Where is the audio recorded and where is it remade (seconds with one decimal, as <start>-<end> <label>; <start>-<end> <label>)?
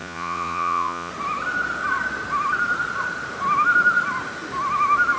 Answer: 0.0-1.1 remade; 1.1-5.2 recorded